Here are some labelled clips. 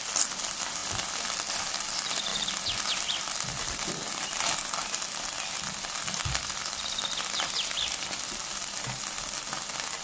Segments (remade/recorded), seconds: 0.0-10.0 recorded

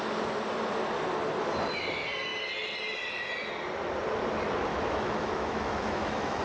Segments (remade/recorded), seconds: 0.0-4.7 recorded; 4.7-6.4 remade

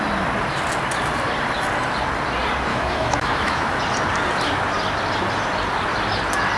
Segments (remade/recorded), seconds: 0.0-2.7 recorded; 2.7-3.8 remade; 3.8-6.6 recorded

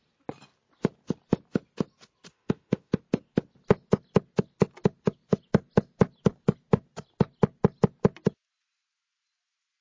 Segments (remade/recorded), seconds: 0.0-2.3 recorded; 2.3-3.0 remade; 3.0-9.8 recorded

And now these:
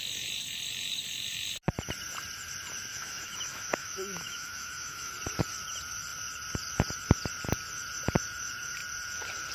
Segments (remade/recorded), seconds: 0.0-2.9 recorded; 2.9-5.1 remade; 5.1-9.5 recorded

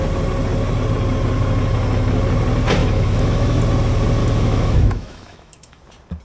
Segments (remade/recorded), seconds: 0.0-2.8 recorded; 2.8-3.6 remade; 3.6-4.2 recorded; 4.2-5.8 remade; 5.8-6.2 recorded

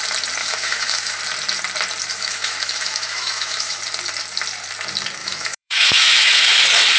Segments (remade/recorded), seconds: 0.0-0.4 recorded; 0.4-1.2 remade; 1.2-2.1 recorded; 2.1-3.8 remade; 3.8-5.2 recorded; 5.2-6.6 remade; 6.6-7.0 recorded